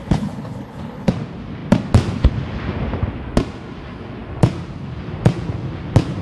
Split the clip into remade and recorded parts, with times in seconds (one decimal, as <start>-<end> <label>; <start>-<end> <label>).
0.0-1.1 remade; 1.1-6.2 recorded